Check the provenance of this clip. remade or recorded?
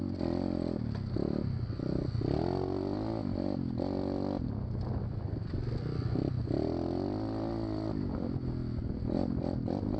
recorded